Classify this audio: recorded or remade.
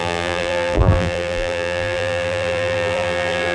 remade